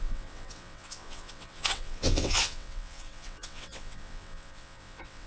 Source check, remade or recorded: remade